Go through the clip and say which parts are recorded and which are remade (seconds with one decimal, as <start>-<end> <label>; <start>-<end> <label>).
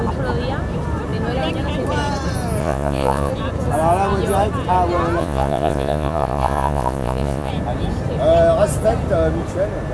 0.0-2.6 recorded; 2.6-3.3 remade; 3.3-5.2 recorded; 5.2-7.5 remade; 7.5-9.9 recorded